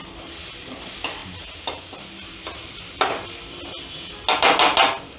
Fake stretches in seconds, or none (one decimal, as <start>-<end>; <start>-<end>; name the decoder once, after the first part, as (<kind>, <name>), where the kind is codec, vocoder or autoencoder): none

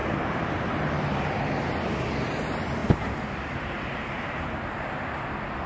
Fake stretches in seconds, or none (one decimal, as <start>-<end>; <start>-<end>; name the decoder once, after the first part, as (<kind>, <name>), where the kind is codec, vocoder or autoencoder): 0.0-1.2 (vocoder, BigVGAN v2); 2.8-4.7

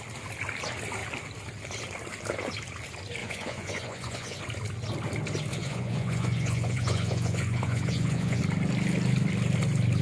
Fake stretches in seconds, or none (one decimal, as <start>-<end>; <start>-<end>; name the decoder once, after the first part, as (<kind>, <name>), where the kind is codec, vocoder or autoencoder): 3.2-4.4 (vocoder, Vocos); 5.5-8.4